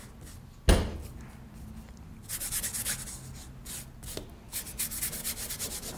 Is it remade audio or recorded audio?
recorded